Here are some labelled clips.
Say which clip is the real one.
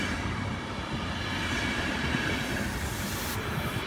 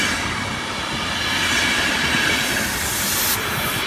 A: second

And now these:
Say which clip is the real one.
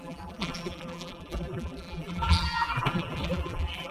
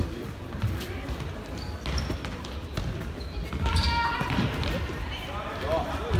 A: second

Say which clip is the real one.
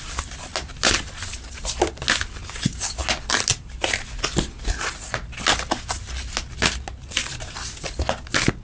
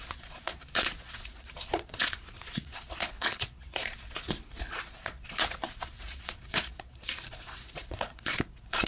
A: first